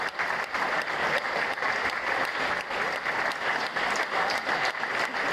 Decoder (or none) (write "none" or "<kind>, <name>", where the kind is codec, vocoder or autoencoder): none